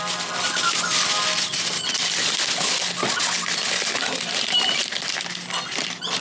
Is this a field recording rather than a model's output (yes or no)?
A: yes